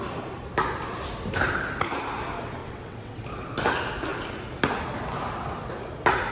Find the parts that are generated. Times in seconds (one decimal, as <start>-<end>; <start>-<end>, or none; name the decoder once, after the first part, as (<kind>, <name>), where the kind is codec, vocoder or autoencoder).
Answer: 2.6-3.2 (vocoder, WaveNeXt)

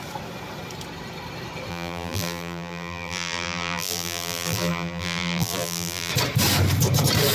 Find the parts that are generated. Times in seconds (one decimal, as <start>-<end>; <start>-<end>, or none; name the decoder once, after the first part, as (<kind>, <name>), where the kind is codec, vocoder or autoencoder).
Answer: 1.7-6.1 (vocoder, BigVGAN v2)

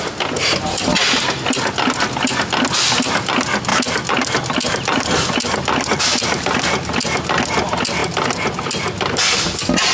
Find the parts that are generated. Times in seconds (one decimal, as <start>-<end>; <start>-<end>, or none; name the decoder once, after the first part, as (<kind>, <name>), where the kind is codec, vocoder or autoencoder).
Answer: none

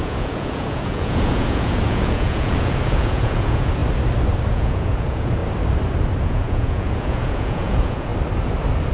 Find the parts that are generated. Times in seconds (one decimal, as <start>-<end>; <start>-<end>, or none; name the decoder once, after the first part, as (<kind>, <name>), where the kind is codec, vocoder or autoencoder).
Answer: 0.0-3.8 (vocoder, Vocos); 4.5-5.4; 6.2-8.1

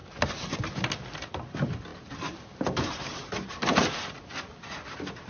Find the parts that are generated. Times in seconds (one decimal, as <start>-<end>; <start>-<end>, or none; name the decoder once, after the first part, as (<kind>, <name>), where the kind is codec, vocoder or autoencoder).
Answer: 0.0-0.6 (vocoder, BigVGAN v2); 1.9-2.5; 3.7-4.5